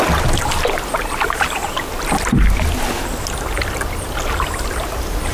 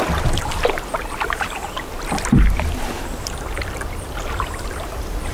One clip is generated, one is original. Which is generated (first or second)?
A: second